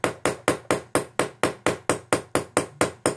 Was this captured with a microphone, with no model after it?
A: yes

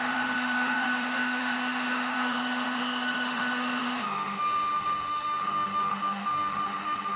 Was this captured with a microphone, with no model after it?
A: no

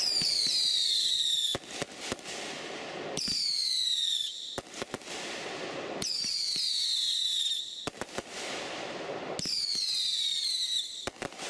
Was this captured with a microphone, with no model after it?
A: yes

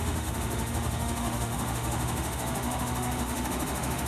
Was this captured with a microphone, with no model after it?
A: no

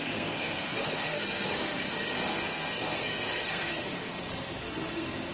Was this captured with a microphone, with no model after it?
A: no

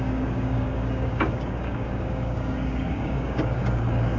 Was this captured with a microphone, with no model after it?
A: no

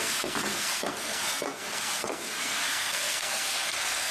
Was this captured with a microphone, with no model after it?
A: no